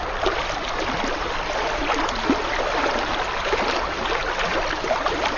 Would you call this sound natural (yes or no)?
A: yes